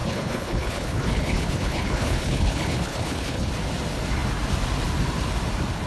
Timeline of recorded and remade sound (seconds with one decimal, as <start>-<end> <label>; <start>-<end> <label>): 0.0-3.5 remade; 3.5-5.9 recorded